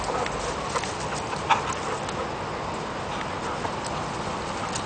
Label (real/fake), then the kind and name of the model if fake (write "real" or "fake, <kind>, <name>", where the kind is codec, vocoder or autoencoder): real